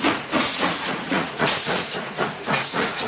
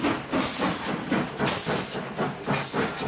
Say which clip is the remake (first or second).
first